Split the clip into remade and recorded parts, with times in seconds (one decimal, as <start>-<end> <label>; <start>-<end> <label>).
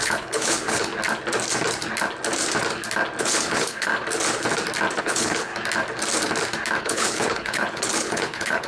0.0-0.9 remade; 0.9-3.2 recorded; 3.2-3.9 remade; 3.9-5.0 recorded; 5.0-5.5 remade; 5.5-6.8 recorded; 6.8-8.7 remade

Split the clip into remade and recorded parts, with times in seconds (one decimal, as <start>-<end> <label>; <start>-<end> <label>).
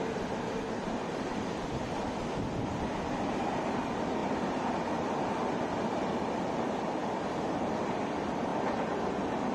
0.0-9.5 recorded